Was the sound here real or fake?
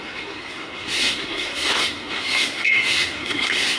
fake